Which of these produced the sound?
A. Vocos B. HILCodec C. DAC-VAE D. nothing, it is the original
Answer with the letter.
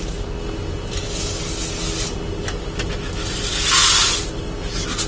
D